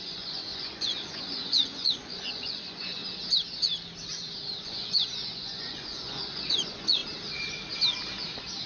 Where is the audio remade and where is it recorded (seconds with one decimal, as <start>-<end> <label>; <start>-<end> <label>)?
0.0-3.0 remade; 3.0-4.6 recorded; 4.6-7.0 remade; 7.0-8.7 recorded